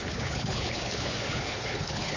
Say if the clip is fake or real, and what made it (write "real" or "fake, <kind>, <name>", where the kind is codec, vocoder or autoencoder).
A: fake, codec, HILCodec